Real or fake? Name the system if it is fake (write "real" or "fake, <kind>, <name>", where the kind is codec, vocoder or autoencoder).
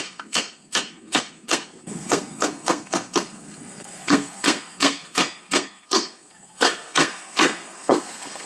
fake, codec, SNAC